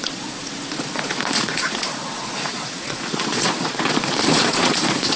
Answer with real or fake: fake